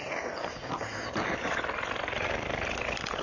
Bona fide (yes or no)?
yes